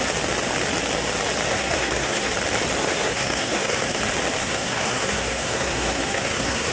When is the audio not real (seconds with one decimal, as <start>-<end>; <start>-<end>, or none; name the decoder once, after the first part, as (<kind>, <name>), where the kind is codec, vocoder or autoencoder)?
1.5-2.3 (codec, SNAC); 2.8-4.0; 4.4-6.7